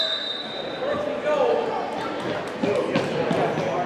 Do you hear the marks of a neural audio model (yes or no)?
no